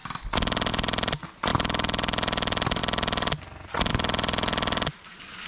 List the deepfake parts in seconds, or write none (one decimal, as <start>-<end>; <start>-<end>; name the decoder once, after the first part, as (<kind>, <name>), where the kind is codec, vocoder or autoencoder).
1.5-2.8 (vocoder, BigVGAN v2)

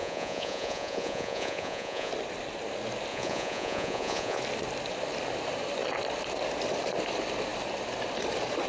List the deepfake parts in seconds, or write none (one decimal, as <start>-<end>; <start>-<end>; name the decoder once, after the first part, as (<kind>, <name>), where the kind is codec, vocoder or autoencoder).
0.0-2.1 (vocoder, Vocos); 3.1-4.4

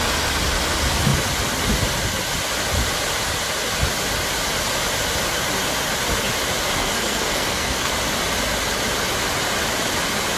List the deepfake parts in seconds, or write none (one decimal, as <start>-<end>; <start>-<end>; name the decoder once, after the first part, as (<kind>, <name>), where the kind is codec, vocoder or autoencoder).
6.8-7.9 (codec, SNAC)

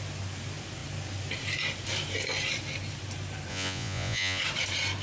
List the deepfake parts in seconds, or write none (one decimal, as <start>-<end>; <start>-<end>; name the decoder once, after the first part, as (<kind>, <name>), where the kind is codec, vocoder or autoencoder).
3.5-4.4 (vocoder, Vocos)

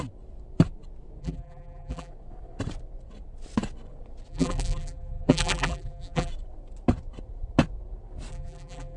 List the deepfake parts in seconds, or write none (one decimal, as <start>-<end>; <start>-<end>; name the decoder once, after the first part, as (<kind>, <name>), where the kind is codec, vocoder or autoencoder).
1.2-2.1 (vocoder, BigVGAN v2); 4.3-6.3; 8.3-9.0

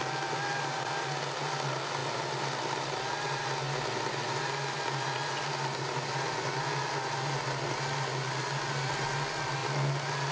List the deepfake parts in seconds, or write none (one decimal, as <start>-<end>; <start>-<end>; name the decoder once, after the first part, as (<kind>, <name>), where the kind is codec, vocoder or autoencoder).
none

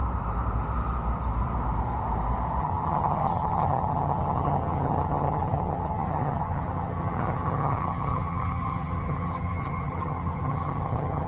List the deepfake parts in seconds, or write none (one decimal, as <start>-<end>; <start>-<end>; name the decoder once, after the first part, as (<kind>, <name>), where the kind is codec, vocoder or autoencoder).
2.6-11.3 (vocoder, HiFi-GAN)